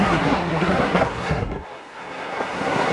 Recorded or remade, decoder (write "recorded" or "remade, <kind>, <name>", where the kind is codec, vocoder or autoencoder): remade, codec, SNAC